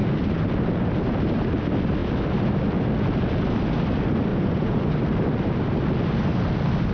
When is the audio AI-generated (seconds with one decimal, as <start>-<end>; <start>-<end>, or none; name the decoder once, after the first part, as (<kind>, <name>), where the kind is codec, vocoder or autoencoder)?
4.3-4.9 (vocoder, Vocos)